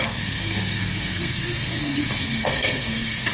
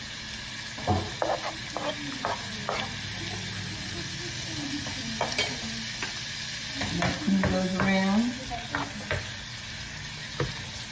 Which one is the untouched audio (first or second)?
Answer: second